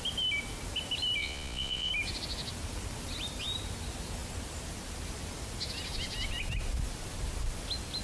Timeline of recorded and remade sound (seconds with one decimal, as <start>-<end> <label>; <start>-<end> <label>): 0.0-1.2 recorded; 1.2-1.9 remade; 1.9-8.0 recorded